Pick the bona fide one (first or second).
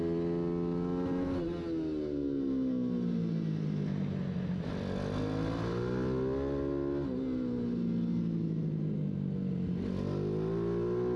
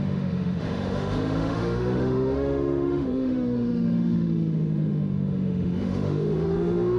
first